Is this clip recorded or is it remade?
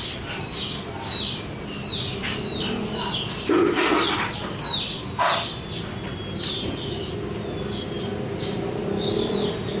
recorded